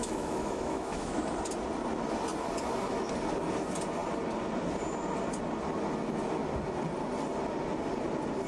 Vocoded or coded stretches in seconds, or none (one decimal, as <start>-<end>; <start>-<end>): 0.0-1.2